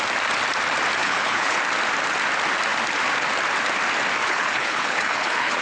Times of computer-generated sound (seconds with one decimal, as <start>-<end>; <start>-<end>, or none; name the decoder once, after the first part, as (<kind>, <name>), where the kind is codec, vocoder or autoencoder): 1.0-1.6 (codec, HILCodec); 4.2-5.6